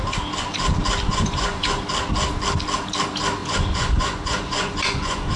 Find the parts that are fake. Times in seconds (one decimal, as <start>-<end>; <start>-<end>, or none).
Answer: 1.1-1.8; 3.4-5.4